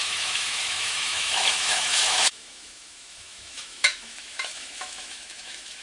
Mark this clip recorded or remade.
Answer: remade